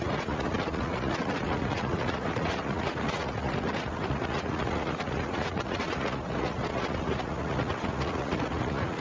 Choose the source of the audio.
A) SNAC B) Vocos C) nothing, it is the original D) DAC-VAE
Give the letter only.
B